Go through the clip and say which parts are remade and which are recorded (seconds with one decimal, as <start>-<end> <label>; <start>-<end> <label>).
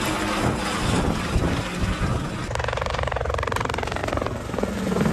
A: 0.0-5.1 recorded